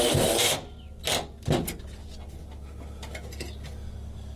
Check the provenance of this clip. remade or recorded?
recorded